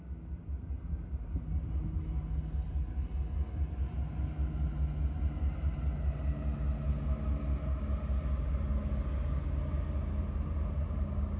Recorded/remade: recorded